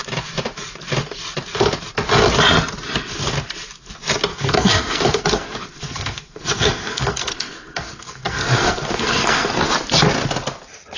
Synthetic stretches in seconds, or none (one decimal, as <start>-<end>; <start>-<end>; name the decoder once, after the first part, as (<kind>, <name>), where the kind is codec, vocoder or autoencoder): 4.3-9.5 (codec, SNAC)